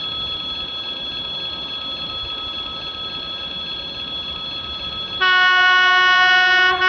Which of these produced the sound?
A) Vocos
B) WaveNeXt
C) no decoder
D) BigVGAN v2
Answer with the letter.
C